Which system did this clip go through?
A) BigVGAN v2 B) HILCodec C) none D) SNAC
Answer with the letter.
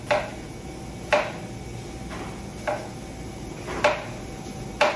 C